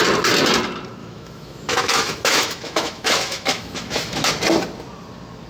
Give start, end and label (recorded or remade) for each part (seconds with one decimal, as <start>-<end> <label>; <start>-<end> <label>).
0.0-1.0 recorded; 1.0-4.3 remade; 4.3-5.5 recorded